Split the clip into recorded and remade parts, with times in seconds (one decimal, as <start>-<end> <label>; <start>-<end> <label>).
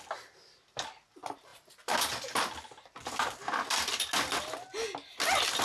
0.0-5.6 recorded